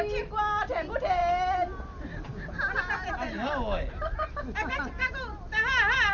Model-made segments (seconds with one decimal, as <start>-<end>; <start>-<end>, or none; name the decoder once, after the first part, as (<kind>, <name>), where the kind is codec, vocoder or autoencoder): none